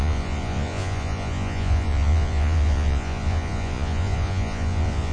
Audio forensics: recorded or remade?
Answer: remade